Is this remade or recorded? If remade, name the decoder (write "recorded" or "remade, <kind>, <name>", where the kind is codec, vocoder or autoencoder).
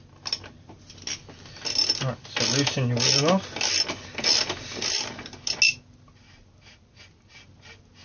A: recorded